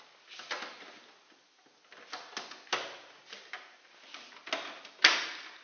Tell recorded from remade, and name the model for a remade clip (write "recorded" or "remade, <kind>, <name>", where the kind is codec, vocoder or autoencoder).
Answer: recorded